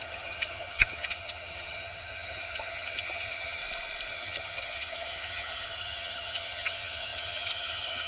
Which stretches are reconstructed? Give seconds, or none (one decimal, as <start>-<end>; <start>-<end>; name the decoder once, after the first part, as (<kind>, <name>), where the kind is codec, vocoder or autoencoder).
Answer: 0.0-3.6 (vocoder, HiFi-GAN); 4.1-8.1